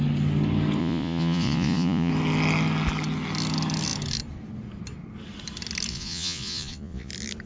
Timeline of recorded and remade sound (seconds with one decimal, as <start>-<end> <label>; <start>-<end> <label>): 0.0-0.8 recorded; 0.8-2.1 remade; 2.1-5.9 recorded; 5.9-7.1 remade; 7.1-7.5 recorded